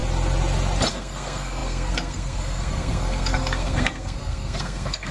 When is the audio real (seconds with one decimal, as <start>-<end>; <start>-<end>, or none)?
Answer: 0.0-0.9